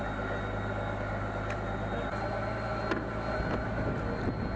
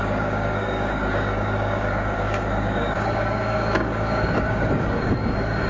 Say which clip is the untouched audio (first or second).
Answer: first